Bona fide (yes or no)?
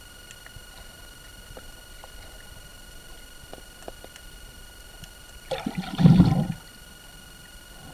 yes